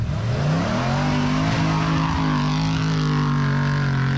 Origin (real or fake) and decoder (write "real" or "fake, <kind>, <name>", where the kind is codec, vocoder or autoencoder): real